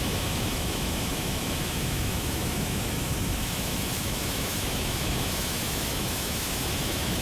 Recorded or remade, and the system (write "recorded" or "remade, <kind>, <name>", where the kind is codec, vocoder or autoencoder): remade, autoencoder, DAC-VAE